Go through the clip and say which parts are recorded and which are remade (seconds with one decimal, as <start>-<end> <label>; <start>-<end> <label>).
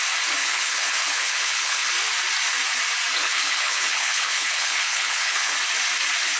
0.0-0.4 recorded; 0.4-1.9 remade; 1.9-3.2 recorded; 3.2-5.5 remade; 5.5-6.4 recorded